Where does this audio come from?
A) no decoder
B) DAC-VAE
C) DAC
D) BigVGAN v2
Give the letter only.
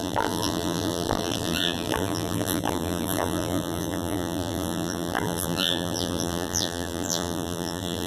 D